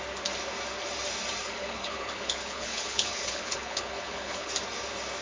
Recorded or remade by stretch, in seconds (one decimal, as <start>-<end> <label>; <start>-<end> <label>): 0.0-1.4 recorded; 1.4-4.5 remade; 4.5-5.2 recorded